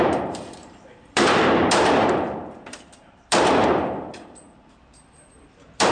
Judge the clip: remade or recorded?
remade